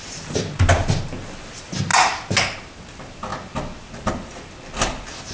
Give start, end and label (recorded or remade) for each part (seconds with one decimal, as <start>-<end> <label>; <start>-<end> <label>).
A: 0.0-5.3 recorded

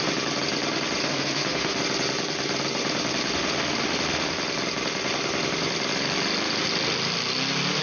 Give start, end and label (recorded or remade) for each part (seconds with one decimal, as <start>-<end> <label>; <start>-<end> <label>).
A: 0.0-1.0 recorded; 1.0-1.8 remade; 1.8-7.8 recorded

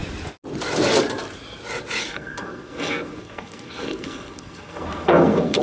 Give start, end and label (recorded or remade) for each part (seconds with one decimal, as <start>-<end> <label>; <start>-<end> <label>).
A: 0.0-2.1 recorded; 2.1-5.6 remade

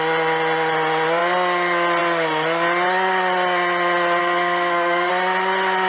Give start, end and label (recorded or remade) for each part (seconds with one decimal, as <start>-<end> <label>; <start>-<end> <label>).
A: 0.0-4.2 recorded; 4.2-5.1 remade; 5.1-5.9 recorded

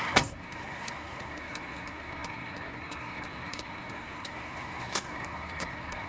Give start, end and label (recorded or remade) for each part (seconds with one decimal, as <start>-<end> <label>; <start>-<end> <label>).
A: 0.0-6.1 remade

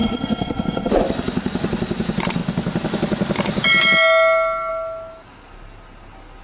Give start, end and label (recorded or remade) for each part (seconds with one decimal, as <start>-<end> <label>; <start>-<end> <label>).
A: 0.0-0.9 remade; 0.9-6.4 recorded